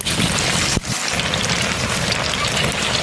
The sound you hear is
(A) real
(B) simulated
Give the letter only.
A